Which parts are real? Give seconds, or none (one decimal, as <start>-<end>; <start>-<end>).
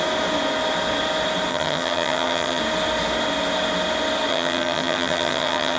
0.0-1.5; 2.6-4.3